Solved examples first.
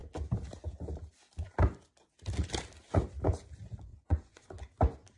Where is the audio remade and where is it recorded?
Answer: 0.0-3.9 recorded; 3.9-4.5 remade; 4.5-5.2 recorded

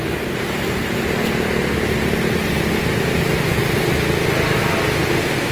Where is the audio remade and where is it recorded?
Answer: 0.0-5.5 recorded

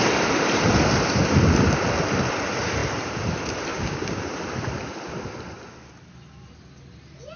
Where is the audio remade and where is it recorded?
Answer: 0.0-3.7 recorded; 3.7-4.3 remade; 4.3-7.4 recorded

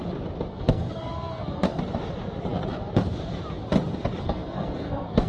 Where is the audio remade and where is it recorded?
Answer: 0.0-0.5 recorded; 0.5-1.8 remade; 1.8-4.2 recorded; 4.2-5.3 remade